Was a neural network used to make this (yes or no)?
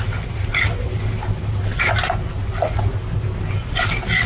no